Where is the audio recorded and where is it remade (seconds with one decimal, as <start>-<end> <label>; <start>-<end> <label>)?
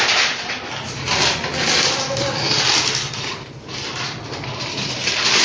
0.0-5.4 recorded